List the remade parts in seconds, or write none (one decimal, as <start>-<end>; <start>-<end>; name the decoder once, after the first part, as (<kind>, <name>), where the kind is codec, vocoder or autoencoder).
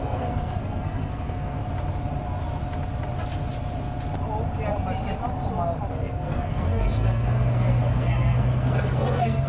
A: 0.0-1.6 (codec, SNAC); 5.9-9.5